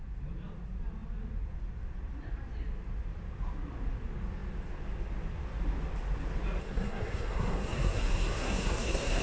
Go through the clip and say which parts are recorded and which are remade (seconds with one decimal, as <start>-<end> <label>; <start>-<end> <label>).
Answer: 0.0-6.6 recorded; 6.6-9.2 remade